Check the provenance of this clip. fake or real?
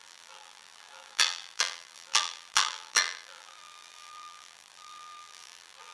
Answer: fake